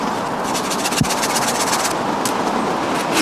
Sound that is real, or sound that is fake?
real